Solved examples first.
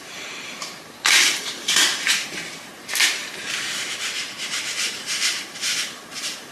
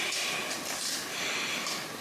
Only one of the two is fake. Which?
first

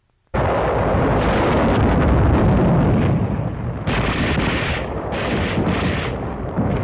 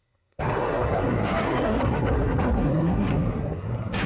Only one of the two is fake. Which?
second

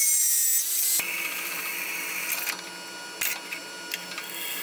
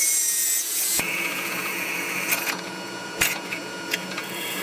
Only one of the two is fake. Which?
second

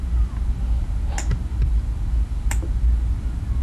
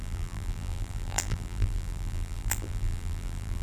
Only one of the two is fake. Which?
second